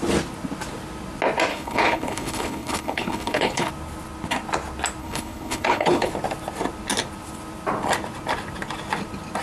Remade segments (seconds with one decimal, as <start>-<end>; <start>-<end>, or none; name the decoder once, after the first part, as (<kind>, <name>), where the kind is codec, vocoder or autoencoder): 1.5-3.7 (codec, HILCodec); 5.0-6.1